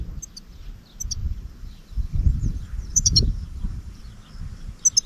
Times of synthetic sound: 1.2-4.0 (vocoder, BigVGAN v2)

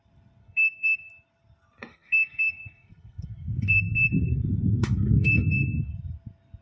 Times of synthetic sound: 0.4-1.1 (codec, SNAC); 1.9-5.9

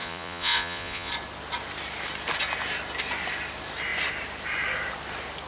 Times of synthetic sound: 0.0-1.1 (vocoder, Vocos)

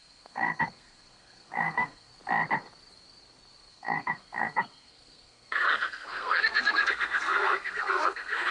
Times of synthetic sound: 0.0-2.1 (codec, SNAC); 3.7-8.5

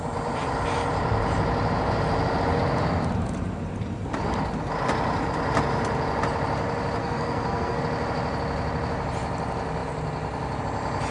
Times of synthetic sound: 7.0-7.8 (codec, SNAC)

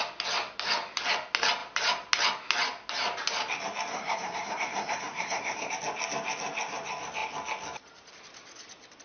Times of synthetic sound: 3.9-5.7 (codec, SNAC)

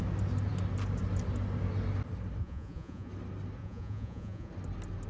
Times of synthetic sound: 2.4-3.1 (vocoder, Vocos); 3.6-4.5